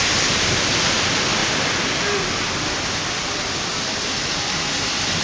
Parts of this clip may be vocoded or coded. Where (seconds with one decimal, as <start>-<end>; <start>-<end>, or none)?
none